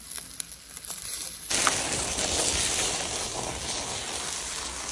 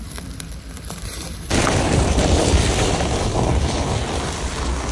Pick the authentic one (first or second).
first